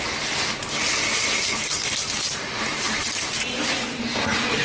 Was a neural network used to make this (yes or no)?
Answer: no